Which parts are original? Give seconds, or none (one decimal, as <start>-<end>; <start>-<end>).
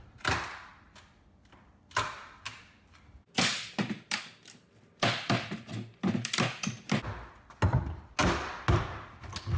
0.0-9.6